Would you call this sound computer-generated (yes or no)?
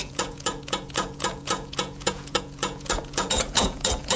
yes